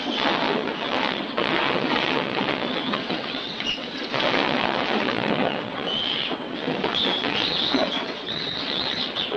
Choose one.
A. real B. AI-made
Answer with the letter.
B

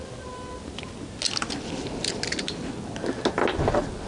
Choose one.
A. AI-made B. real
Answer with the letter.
B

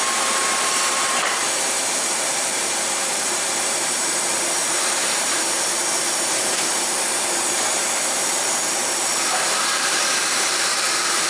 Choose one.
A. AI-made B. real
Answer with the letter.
A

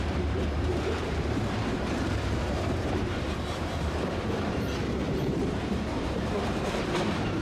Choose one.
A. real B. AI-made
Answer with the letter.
B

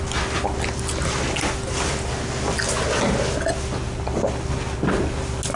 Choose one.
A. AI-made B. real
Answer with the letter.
B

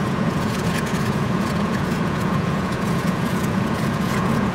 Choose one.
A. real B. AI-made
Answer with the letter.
B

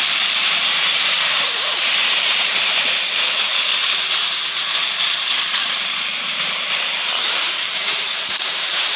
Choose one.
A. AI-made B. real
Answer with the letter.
A